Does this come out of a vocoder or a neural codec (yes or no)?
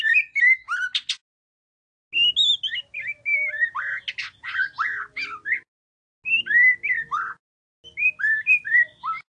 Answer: no